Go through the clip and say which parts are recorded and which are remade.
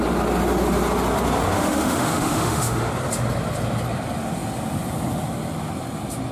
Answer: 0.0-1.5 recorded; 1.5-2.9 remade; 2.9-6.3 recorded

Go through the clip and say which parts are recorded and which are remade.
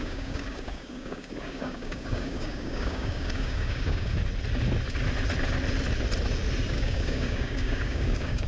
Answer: 0.0-4.1 remade; 4.1-6.7 recorded; 6.7-8.5 remade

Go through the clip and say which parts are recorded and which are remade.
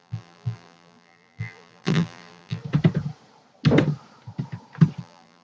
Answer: 0.0-2.6 remade; 2.6-5.0 recorded; 5.0-5.4 remade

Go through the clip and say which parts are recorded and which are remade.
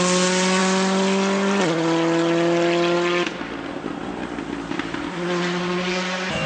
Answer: 0.0-6.5 recorded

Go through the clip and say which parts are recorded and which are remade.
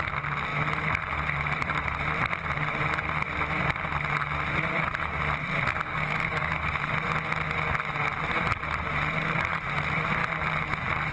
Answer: 0.0-5.7 recorded; 5.7-6.5 remade; 6.5-11.1 recorded